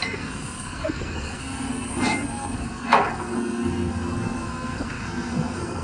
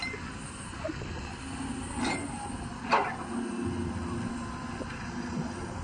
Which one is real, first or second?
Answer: second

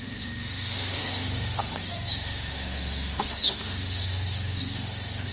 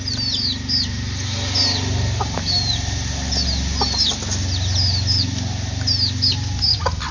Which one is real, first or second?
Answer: second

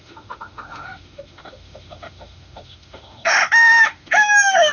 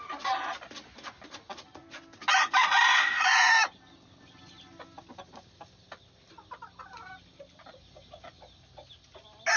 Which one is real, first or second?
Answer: second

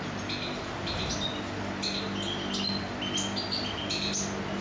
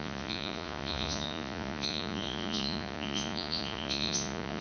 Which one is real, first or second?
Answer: first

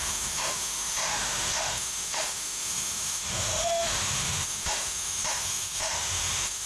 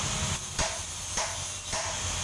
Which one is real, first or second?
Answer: second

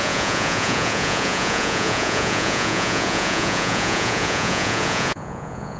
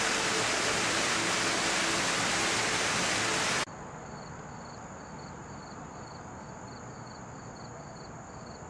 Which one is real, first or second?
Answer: second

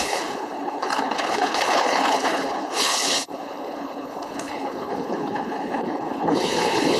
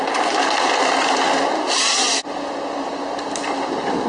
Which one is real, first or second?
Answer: second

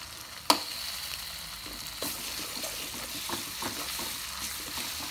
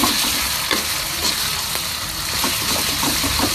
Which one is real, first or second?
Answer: first